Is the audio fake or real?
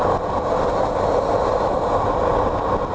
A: real